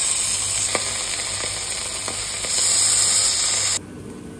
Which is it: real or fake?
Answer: real